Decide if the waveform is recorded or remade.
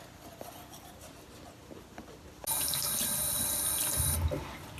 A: recorded